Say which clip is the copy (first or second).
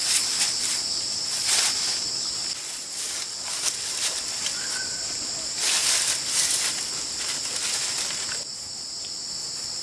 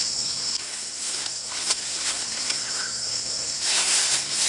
second